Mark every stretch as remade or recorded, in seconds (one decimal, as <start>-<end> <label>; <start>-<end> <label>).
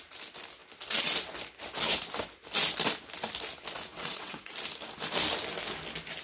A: 0.0-3.9 recorded; 3.9-4.5 remade; 4.5-6.2 recorded